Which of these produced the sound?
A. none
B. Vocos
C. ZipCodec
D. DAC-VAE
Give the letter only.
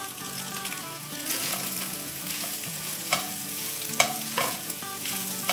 B